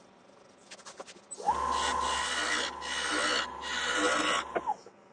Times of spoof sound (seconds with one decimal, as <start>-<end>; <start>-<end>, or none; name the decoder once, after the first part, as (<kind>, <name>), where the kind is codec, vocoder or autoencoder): none